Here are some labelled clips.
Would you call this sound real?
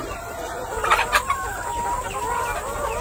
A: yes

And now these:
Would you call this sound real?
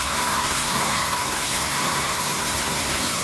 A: no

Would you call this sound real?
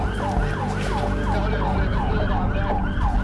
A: yes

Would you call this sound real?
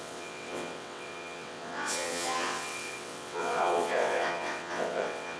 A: no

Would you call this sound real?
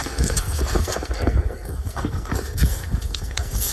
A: no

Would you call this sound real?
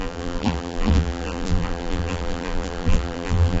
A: no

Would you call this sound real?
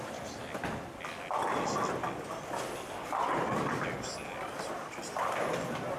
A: yes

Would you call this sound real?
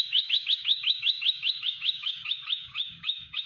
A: no